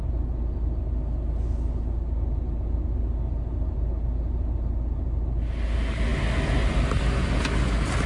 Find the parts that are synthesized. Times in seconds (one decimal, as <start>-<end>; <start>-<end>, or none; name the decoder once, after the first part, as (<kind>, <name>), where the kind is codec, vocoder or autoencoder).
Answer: none